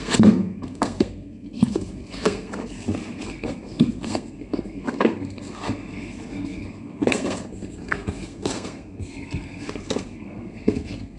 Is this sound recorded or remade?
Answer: remade